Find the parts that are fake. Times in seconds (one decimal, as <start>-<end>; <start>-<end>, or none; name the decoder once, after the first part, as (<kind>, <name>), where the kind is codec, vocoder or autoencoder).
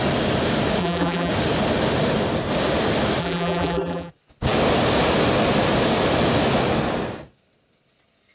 0.8-1.3 (vocoder, BigVGAN v2); 3.2-4.1